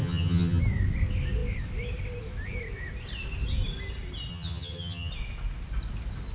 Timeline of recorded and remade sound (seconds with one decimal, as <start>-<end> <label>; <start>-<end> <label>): 0.0-0.6 remade; 0.6-4.3 recorded; 4.3-5.1 remade; 5.1-6.3 recorded